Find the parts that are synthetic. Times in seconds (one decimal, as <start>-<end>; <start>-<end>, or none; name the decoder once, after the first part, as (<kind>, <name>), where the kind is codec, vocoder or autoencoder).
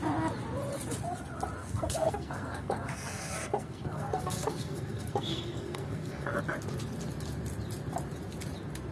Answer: 1.6-6.4 (codec, SNAC)